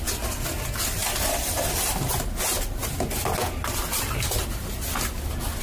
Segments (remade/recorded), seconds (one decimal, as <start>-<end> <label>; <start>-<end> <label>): 0.0-5.6 recorded